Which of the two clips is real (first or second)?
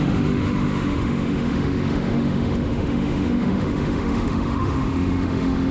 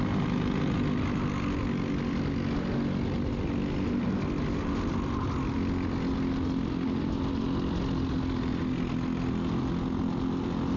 second